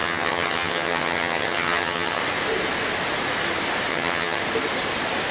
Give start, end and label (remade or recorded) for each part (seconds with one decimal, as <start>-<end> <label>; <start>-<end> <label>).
0.0-2.2 remade; 2.2-3.9 recorded; 3.9-4.4 remade; 4.4-5.3 recorded